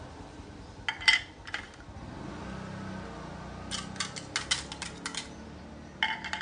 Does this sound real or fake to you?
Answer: real